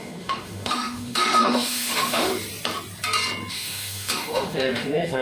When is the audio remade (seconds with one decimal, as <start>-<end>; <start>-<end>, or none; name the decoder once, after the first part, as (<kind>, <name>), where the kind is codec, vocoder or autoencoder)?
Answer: 0.0-2.3 (autoencoder, DAC-VAE); 3.5-5.2